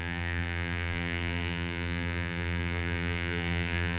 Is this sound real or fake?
fake